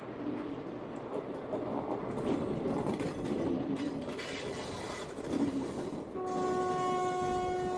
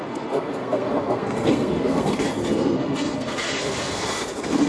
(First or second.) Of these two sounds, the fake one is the second